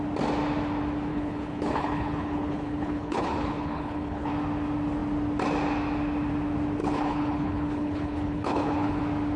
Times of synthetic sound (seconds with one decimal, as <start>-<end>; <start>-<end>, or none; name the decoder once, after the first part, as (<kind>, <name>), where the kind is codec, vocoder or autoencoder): 1.1-4.3 (codec, HILCodec); 6.8-9.0